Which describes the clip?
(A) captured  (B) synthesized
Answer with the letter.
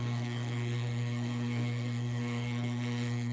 B